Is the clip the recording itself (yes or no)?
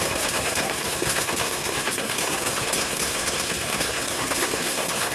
no